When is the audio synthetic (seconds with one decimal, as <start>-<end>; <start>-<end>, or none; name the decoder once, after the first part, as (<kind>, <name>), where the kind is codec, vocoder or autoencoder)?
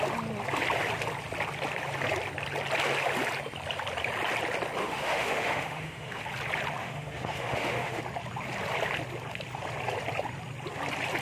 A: 4.8-6.2 (autoencoder, DAC-VAE); 6.8-8.0